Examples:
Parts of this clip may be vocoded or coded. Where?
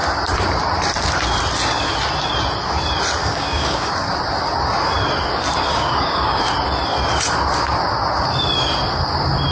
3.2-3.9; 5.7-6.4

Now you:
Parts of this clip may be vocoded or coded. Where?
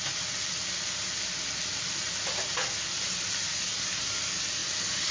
none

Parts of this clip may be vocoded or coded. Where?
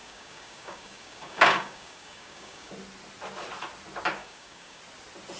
0.0-2.7; 4.2-4.8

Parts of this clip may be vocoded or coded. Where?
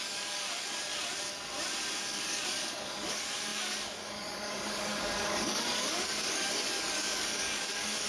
0.0-0.9; 2.0-8.1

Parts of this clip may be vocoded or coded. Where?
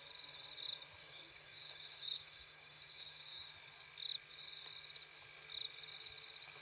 1.0-3.5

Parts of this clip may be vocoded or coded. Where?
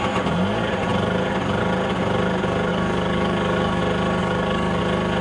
2.7-3.8; 4.2-4.8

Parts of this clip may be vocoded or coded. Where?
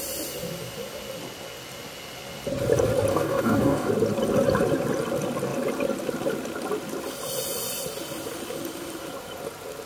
3.1-3.9